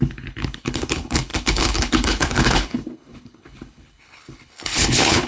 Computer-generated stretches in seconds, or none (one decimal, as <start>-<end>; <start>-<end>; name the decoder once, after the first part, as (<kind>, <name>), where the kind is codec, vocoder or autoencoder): 0.0-5.3 (codec, HILCodec)